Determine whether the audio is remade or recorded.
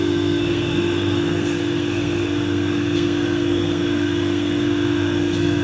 remade